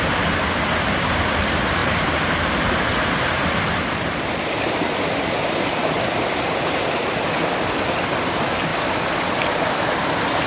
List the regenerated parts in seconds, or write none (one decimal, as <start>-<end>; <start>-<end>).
1.8-6.9; 8.7-9.4